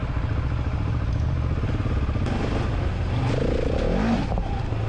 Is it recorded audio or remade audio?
recorded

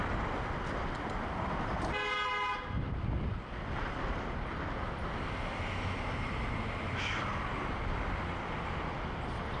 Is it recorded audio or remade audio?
recorded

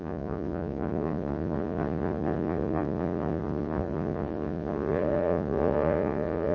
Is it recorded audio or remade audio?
remade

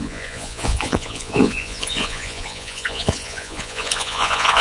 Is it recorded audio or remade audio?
remade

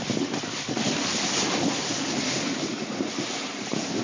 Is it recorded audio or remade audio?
recorded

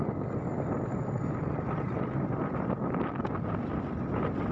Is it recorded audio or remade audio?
recorded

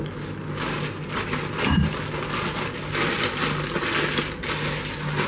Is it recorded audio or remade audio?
recorded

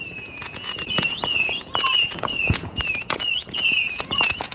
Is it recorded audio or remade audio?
remade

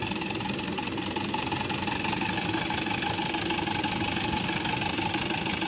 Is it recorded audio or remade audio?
recorded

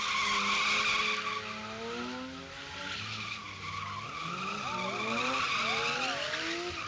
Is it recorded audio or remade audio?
recorded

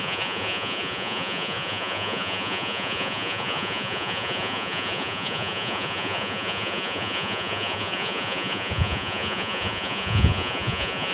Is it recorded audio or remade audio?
remade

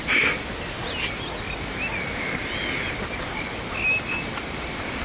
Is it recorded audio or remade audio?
recorded